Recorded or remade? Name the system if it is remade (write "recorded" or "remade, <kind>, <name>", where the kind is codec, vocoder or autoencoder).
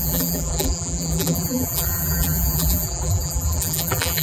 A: remade, vocoder, BigVGAN v2